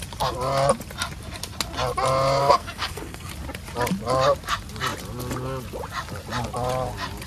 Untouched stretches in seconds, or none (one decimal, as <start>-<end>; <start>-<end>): 0.0-2.4; 3.3-7.3